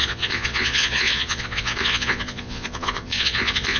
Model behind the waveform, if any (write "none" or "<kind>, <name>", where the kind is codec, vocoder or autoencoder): vocoder, Vocos